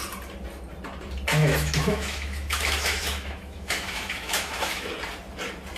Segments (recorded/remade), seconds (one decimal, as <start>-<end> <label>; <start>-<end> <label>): 0.0-1.4 recorded; 1.4-4.9 remade; 4.9-5.8 recorded